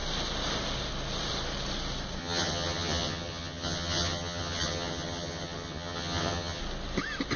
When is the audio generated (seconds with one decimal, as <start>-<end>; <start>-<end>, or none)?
2.2-6.6

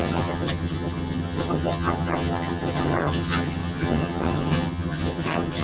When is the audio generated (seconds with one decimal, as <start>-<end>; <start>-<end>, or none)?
0.0-5.6

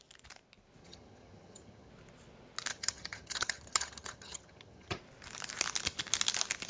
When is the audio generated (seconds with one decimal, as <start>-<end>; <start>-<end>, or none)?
0.8-1.9; 2.7-5.0

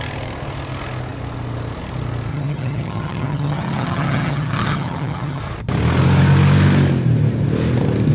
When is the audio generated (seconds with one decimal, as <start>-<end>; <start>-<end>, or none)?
2.3-5.4

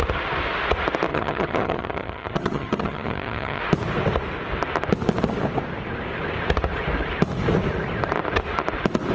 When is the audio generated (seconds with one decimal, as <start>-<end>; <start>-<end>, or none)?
1.1-3.6

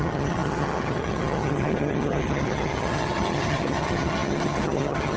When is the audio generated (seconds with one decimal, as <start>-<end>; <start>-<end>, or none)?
0.0-5.2

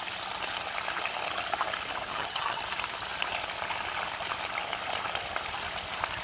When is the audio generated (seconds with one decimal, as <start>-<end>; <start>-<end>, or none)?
2.1-2.6

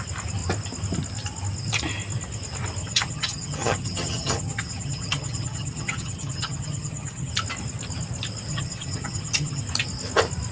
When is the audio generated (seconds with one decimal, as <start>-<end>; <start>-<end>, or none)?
2.8-7.3; 8.5-9.6